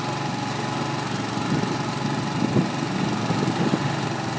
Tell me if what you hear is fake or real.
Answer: real